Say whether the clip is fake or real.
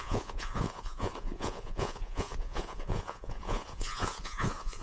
fake